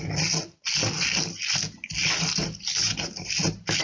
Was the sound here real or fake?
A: real